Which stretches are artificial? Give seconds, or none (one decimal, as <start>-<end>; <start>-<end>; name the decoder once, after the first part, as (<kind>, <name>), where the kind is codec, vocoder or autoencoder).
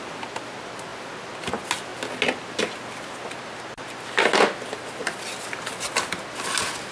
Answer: none